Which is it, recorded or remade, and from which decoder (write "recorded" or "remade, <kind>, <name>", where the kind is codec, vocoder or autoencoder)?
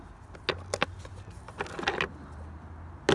recorded